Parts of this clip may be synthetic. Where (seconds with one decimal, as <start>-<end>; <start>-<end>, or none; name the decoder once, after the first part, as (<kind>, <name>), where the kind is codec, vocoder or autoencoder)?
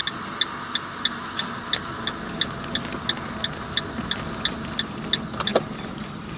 5.5-6.4 (vocoder, BigVGAN v2)